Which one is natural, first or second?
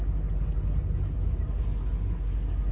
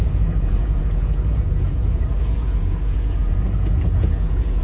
first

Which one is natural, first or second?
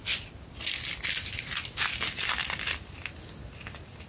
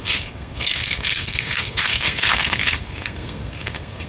first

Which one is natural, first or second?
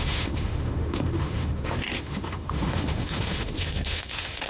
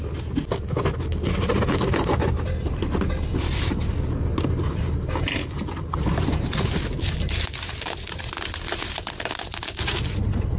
second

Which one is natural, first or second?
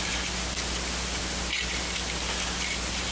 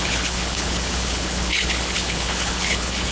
first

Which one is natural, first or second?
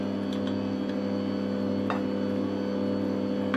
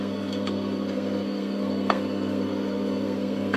first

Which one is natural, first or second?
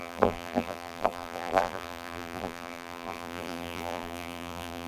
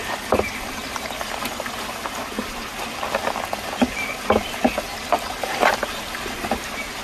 second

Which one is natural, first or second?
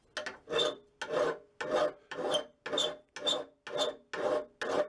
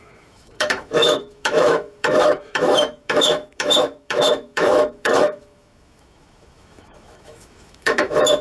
first